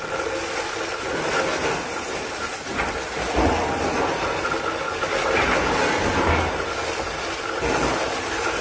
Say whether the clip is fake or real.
real